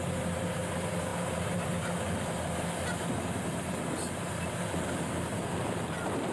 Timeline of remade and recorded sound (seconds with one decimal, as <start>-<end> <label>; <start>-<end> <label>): 0.0-6.3 recorded